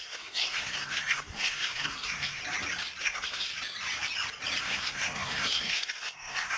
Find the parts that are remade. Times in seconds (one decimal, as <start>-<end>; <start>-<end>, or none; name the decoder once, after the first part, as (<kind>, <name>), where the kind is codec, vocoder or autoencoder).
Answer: 0.0-2.4 (codec, SNAC); 3.0-3.5; 4.6-6.6